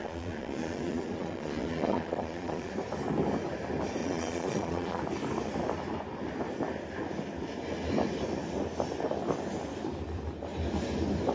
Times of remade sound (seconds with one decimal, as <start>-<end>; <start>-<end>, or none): 0.0-2.7; 4.0-5.0